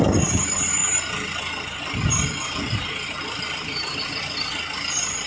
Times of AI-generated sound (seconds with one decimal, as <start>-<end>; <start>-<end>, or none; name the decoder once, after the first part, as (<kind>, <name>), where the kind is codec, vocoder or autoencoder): 2.7-3.2 (vocoder, BigVGAN v2); 3.7-4.2

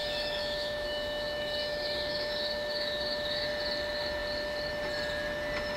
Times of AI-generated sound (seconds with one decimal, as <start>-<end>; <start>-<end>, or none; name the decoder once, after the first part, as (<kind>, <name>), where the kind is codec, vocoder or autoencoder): 0.0-3.5 (autoencoder, DAC-VAE)

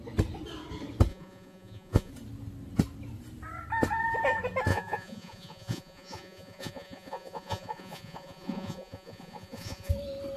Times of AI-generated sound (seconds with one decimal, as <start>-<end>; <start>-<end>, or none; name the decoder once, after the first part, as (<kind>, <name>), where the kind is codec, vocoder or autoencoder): 1.1-2.1 (vocoder, Vocos); 4.7-9.9

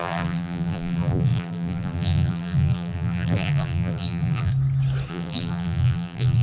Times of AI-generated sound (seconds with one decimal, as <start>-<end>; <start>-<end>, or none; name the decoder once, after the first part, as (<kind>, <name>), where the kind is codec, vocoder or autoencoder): 0.0-4.5 (vocoder, BigVGAN v2); 5.1-6.4

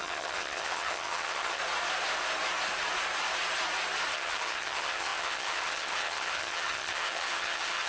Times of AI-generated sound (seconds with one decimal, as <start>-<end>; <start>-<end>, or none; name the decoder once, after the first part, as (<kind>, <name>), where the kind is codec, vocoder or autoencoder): 0.0-1.6 (vocoder, HiFi-GAN); 4.1-7.9